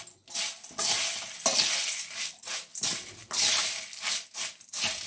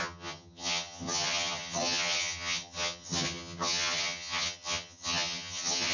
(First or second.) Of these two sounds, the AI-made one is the second